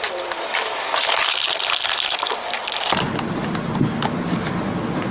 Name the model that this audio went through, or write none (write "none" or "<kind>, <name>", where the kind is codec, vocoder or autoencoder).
none